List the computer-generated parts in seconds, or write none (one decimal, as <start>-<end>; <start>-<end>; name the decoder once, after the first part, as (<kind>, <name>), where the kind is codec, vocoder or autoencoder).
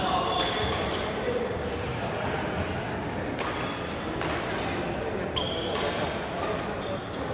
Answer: none